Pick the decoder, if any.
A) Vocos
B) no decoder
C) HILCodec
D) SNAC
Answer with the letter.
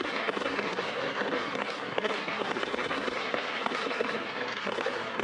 D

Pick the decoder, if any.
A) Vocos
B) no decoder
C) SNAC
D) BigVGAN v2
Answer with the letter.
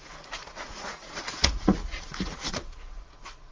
A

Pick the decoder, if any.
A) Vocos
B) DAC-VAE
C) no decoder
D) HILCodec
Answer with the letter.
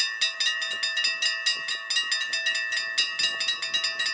C